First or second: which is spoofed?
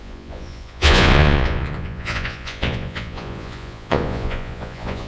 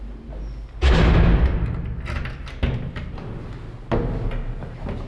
first